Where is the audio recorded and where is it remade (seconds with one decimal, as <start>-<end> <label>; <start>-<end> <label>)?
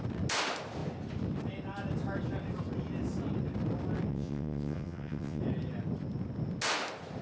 0.0-4.1 recorded; 4.1-5.4 remade; 5.4-7.2 recorded